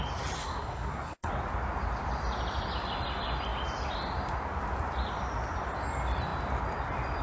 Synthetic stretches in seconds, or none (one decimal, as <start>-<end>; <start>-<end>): 0.4-1.3